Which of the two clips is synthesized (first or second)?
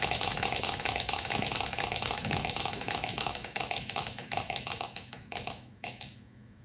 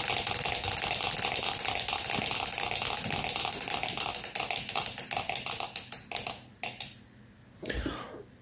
first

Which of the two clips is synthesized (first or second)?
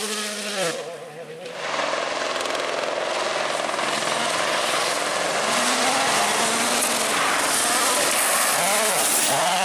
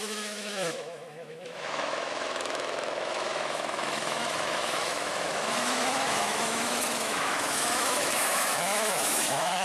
second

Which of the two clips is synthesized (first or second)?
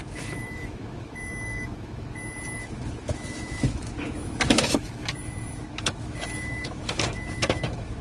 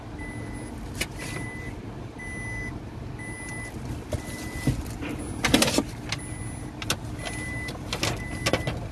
first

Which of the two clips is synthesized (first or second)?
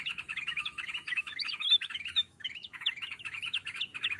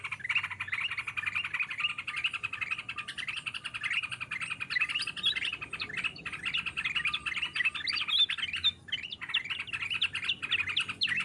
first